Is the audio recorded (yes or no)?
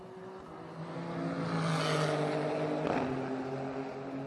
yes